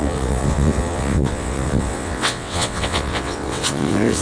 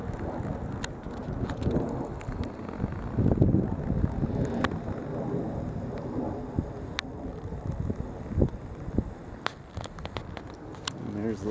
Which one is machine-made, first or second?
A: first